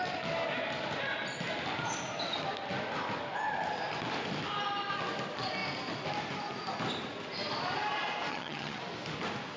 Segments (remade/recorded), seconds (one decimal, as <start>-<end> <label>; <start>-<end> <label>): 0.0-8.3 recorded; 8.3-8.8 remade; 8.8-9.6 recorded